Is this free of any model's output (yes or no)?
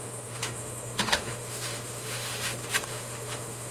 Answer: no